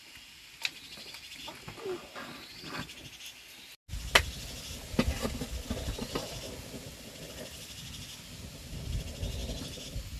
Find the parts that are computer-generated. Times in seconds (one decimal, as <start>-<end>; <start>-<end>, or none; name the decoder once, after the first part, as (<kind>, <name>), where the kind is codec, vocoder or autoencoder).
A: none